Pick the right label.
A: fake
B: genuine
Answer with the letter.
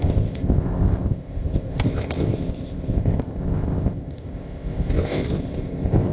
A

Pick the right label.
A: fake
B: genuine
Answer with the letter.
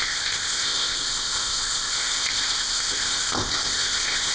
A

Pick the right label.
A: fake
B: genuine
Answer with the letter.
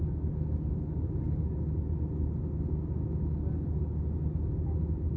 B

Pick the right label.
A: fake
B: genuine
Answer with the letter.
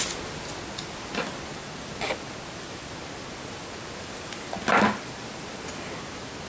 B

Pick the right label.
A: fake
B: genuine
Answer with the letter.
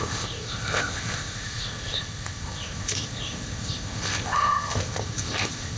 A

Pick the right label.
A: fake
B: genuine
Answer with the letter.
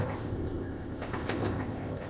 A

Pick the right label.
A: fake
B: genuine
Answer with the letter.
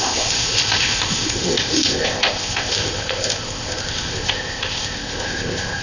A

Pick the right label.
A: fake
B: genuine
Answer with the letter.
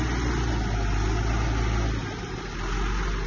B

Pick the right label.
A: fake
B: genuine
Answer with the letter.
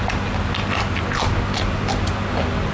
B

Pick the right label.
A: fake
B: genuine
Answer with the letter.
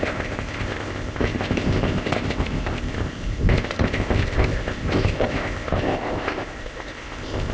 A